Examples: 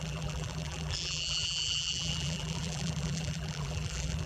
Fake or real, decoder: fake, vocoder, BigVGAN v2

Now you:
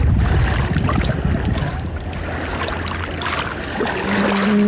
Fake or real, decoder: real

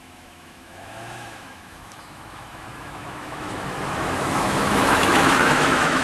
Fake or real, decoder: fake, autoencoder, DAC-VAE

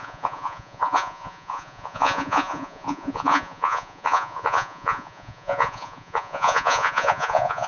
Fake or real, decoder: fake, vocoder, Vocos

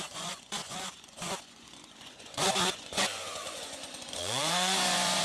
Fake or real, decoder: fake, vocoder, Vocos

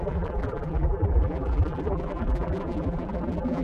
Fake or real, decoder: fake, vocoder, BigVGAN v2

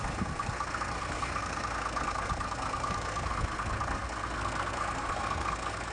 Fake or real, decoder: fake, codec, SNAC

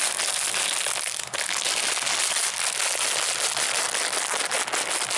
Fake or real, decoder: real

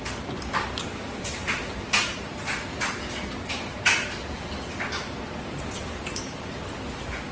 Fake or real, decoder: real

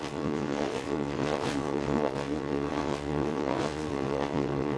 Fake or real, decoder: fake, vocoder, WaveNeXt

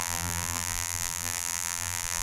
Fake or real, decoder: fake, vocoder, BigVGAN v2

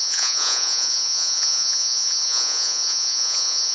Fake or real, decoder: fake, vocoder, Vocos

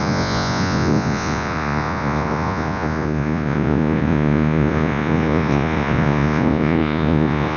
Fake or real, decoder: fake, vocoder, Vocos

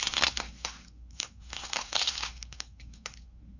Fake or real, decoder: fake, codec, SNAC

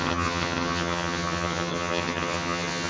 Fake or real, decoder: fake, vocoder, HiFi-GAN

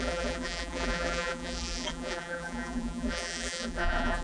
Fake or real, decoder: fake, vocoder, BigVGAN v2